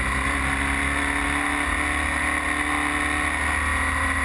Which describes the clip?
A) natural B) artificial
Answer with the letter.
A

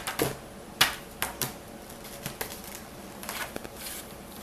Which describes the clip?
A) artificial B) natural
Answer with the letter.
B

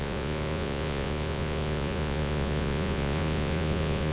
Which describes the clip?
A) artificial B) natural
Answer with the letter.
A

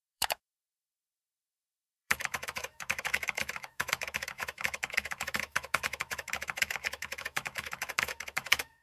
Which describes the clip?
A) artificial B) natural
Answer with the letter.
A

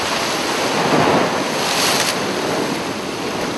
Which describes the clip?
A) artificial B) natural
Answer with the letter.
B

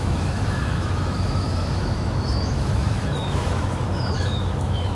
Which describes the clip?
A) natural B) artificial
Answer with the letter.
B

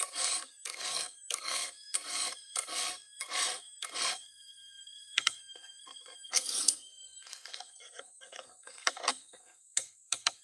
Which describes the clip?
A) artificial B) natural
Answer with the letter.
A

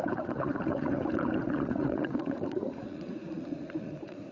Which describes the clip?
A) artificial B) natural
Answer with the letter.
A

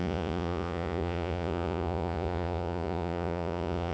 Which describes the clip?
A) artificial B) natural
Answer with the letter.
A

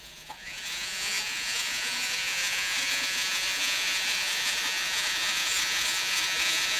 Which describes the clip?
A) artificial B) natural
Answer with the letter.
A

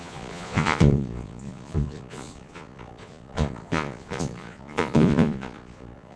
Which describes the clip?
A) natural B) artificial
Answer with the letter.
B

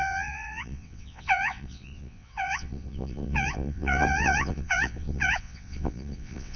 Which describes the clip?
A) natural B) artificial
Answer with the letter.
B